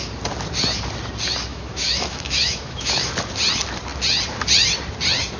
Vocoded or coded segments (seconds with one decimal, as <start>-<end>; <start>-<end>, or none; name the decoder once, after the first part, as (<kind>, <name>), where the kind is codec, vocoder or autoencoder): 1.5-3.1 (autoencoder, DAC-VAE)